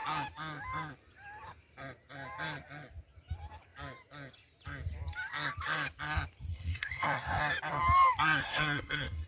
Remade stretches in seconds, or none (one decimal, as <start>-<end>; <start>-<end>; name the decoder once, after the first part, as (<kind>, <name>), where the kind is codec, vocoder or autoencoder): 6.5-7.4 (codec, SNAC); 8.4-9.3